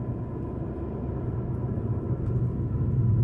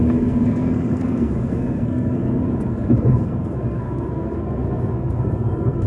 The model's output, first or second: second